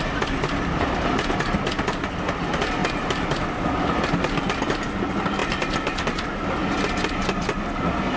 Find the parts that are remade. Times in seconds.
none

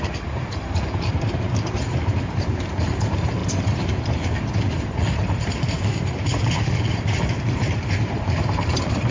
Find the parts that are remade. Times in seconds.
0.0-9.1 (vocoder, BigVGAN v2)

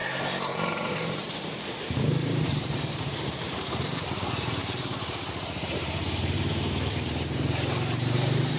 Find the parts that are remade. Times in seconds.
0.0-8.6 (vocoder, BigVGAN v2)

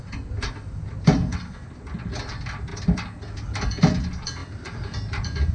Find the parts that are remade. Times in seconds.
4.4-5.5 (vocoder, BigVGAN v2)

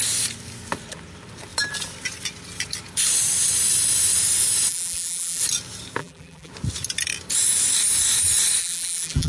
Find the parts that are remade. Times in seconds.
4.7-5.4 (vocoder, BigVGAN v2); 6.0-6.5; 8.6-9.3

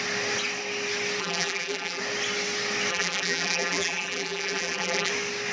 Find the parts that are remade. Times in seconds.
1.2-2.0 (vocoder, BigVGAN v2); 2.9-5.1

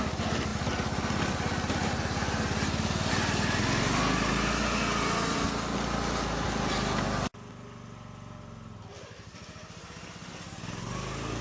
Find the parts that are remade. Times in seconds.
none